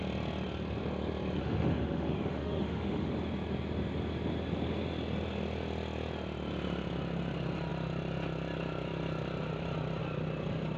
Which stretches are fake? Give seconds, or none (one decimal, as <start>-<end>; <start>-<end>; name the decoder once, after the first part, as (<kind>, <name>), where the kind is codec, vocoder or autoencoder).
1.4-3.1 (autoencoder, DAC-VAE)